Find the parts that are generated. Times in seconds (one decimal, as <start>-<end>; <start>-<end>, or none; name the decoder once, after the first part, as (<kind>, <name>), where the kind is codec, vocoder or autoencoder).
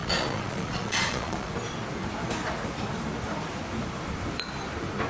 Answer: 0.0-1.5 (vocoder, Vocos)